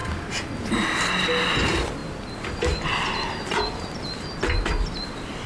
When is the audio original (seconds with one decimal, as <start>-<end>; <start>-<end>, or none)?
0.0-5.5